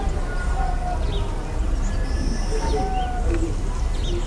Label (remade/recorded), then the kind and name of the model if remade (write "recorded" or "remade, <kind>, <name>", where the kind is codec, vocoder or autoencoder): recorded